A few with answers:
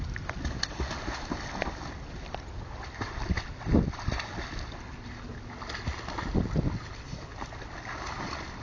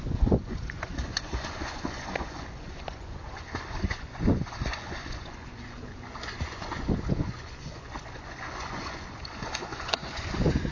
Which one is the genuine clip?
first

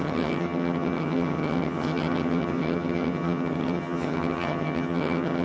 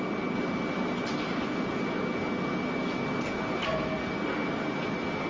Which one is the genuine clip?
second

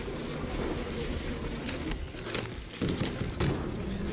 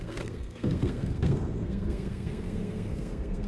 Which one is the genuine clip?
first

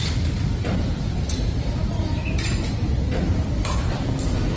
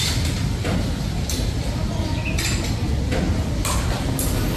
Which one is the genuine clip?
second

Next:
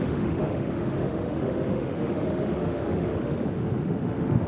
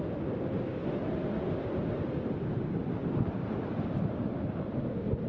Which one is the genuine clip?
second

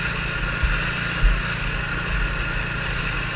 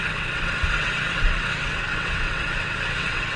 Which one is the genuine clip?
first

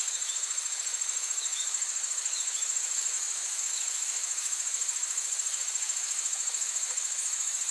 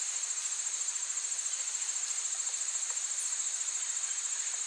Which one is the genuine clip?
second